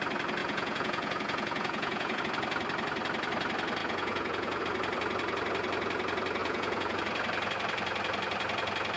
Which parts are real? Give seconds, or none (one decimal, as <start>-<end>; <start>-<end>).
0.0-0.4; 2.2-3.8; 4.6-6.4; 7.0-9.0